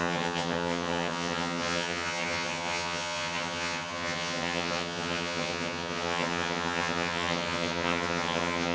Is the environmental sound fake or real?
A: fake